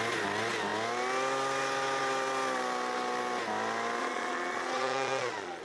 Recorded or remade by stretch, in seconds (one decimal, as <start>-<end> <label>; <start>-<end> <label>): 0.0-4.0 recorded; 4.0-5.6 remade